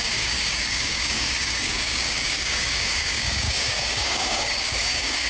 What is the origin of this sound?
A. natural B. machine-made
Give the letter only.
B